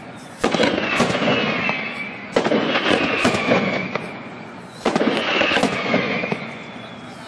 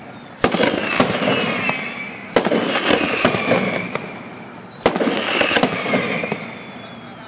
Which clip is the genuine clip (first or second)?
second